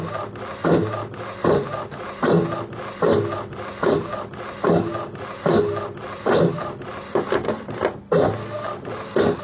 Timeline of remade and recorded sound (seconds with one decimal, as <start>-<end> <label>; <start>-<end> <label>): 0.0-9.4 recorded

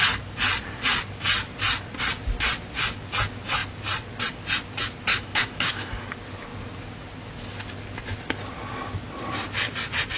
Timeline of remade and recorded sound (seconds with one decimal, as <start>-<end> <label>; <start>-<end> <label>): 0.0-5.1 recorded; 5.1-5.9 remade; 5.9-10.2 recorded

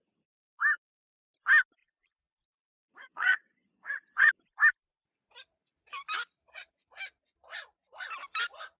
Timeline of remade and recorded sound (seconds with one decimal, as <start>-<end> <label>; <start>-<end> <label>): 0.0-1.8 recorded; 1.8-4.3 remade; 4.3-8.8 recorded

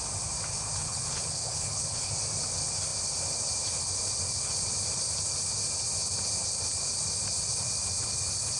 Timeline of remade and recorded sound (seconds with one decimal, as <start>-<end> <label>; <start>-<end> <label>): 0.0-0.8 recorded; 0.8-2.1 remade; 2.1-8.6 recorded